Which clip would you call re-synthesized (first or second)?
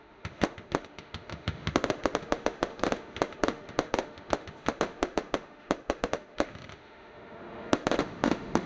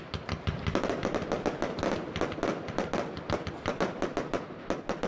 first